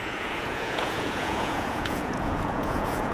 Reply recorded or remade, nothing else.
remade